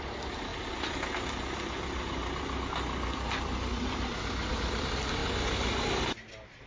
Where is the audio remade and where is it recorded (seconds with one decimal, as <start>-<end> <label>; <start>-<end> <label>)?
0.0-6.7 recorded